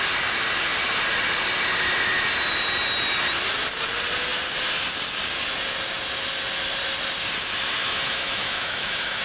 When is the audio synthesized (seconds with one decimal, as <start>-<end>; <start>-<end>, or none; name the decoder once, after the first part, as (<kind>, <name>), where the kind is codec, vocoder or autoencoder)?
7.8-9.2 (autoencoder, DAC-VAE)